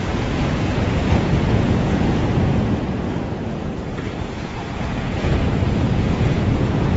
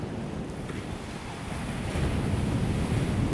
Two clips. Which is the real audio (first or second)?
second